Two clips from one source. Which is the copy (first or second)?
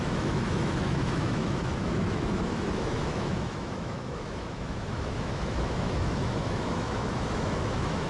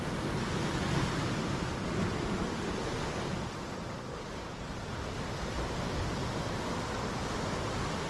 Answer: first